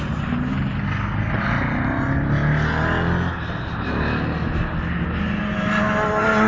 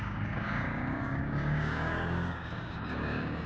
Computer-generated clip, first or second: second